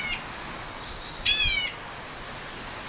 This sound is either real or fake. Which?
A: real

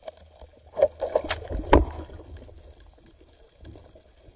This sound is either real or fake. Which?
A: real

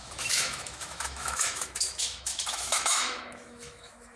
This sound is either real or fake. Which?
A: fake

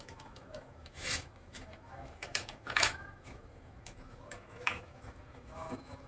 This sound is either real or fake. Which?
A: fake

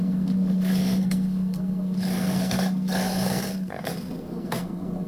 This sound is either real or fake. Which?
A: fake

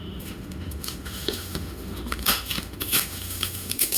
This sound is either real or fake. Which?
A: fake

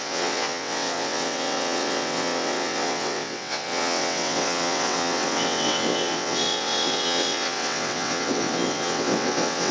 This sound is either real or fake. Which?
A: fake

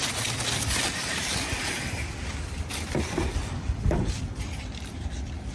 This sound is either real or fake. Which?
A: real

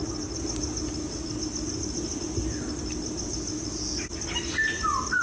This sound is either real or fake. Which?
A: real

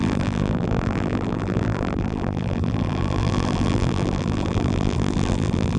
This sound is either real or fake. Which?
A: fake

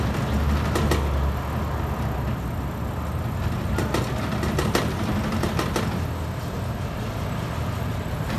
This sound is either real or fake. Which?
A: real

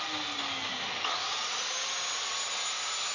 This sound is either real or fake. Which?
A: real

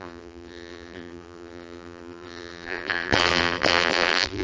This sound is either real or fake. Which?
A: fake